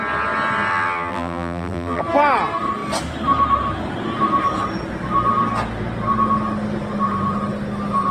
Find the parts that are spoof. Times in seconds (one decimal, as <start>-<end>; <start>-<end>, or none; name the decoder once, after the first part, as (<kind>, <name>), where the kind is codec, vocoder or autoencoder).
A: 0.7-2.0 (vocoder, BigVGAN v2)